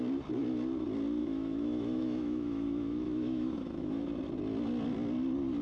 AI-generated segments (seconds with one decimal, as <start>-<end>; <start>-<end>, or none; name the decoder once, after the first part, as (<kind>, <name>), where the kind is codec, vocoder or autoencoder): 1.2-4.1 (autoencoder, DAC-VAE)